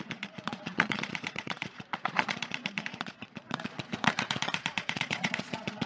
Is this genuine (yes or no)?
no